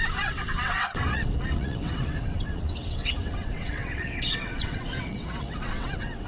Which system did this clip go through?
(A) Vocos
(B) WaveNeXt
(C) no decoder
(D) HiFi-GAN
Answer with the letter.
B